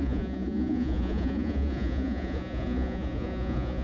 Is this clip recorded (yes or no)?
no